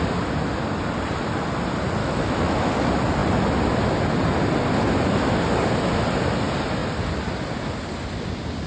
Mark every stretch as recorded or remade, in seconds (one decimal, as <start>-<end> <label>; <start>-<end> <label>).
0.0-2.0 recorded; 2.0-2.7 remade; 2.7-8.7 recorded